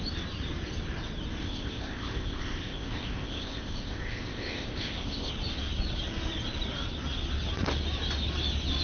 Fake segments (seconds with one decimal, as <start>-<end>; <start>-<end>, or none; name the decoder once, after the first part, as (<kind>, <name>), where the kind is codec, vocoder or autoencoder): 1.4-5.3 (codec, ZipCodec)

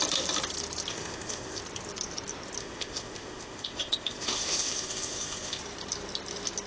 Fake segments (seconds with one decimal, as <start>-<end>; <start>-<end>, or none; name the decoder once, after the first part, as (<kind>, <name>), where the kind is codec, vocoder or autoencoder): 0.9-1.6 (codec, ZipCodec); 2.6-5.6

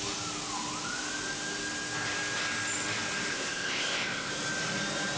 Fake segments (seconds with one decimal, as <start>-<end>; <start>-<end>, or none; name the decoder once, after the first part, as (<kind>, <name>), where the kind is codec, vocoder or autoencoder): 3.3-4.3 (codec, ZipCodec)

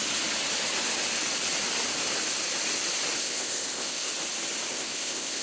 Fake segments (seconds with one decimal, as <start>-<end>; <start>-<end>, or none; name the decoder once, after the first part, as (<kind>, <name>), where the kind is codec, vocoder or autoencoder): 3.2-4.1 (codec, ZipCodec); 4.7-5.4

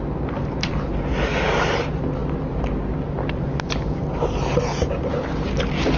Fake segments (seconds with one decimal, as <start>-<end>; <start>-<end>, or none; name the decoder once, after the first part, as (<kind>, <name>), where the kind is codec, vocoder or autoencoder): none

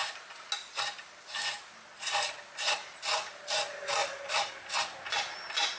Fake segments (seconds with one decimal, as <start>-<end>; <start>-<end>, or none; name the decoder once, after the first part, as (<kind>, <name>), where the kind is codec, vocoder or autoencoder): none